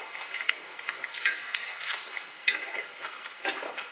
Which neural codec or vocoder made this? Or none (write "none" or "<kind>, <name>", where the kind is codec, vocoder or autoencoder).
codec, SNAC